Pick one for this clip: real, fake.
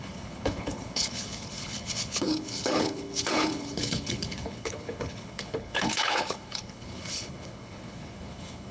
fake